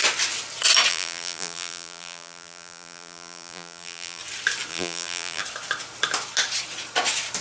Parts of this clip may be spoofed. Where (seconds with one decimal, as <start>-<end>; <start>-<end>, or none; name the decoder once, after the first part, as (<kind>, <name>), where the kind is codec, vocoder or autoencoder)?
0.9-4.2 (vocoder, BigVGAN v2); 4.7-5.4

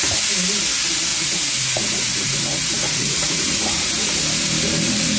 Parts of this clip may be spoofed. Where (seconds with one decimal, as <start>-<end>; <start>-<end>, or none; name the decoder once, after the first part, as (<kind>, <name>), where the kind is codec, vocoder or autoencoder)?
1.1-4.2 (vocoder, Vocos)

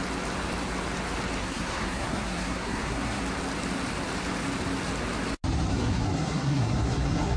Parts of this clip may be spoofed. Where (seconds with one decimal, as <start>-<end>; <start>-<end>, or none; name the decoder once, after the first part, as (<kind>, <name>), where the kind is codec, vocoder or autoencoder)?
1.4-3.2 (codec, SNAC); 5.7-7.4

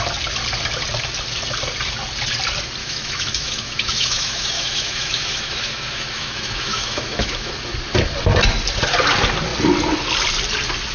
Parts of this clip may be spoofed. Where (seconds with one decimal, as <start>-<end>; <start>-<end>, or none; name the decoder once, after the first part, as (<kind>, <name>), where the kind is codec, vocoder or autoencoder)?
2.8-7.5 (autoencoder, DAC-VAE)

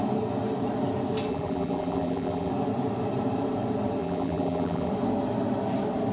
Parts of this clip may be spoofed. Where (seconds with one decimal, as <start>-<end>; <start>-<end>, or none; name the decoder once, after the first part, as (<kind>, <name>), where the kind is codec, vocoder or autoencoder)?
1.3-2.5 (vocoder, BigVGAN v2); 4.0-4.9

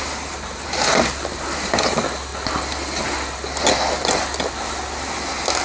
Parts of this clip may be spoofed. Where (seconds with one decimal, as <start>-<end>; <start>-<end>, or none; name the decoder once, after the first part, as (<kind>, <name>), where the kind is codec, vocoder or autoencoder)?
none

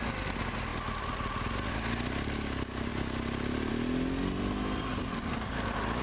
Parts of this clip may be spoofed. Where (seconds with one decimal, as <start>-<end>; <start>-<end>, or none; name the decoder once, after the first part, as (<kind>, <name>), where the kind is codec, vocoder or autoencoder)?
4.9-5.5 (vocoder, BigVGAN v2)